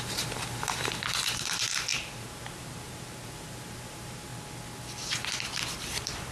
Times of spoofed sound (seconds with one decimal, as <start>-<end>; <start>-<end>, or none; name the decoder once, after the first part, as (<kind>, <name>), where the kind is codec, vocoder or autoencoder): 0.0-4.3 (vocoder, BigVGAN v2); 5.5-6.3